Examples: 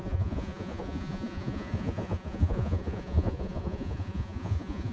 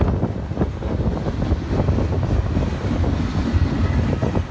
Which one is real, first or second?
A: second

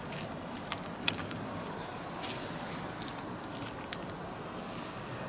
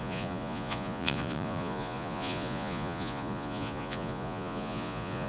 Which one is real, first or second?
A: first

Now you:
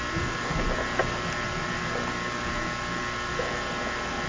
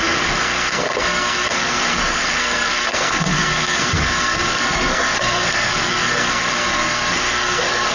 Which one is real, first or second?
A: first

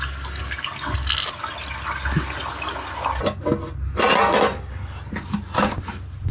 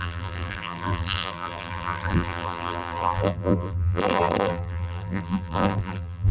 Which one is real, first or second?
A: first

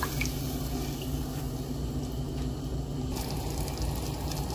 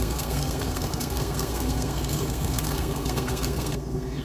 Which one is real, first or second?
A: first